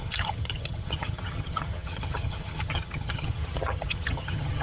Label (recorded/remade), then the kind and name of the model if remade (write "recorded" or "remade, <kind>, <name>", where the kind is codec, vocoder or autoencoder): remade, vocoder, HiFi-GAN